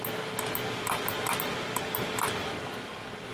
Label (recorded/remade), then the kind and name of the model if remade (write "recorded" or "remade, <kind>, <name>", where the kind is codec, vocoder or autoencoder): recorded